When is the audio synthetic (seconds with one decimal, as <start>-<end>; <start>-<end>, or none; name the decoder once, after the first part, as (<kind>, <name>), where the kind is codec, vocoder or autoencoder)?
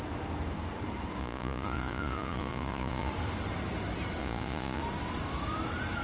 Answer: 1.2-3.1 (vocoder, Vocos); 4.2-4.8